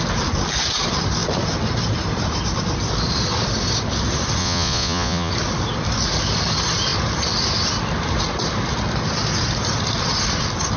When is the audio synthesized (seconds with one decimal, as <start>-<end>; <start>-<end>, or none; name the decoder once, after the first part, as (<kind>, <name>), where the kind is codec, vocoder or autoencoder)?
4.4-5.3 (vocoder, Vocos)